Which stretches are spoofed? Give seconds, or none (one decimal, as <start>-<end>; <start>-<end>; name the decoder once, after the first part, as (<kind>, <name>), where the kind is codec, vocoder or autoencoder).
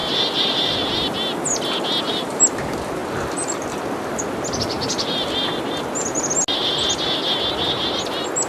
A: none